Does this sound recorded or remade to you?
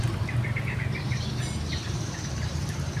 remade